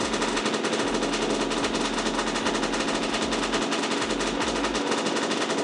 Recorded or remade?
recorded